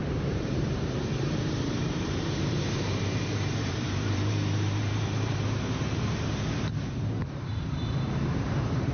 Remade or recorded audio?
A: remade